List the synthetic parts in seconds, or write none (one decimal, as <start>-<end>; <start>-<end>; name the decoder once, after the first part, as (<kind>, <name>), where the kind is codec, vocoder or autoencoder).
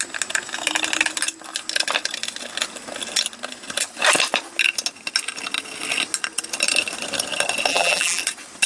7.7-8.2 (vocoder, BigVGAN v2)